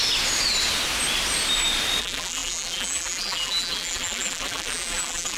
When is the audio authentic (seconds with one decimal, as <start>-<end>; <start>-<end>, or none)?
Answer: 0.0-2.0